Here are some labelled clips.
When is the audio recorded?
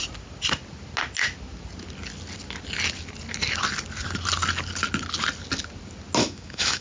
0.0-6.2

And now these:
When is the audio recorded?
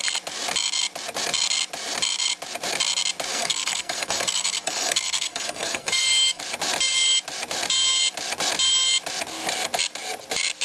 0.0-3.3; 6.4-10.6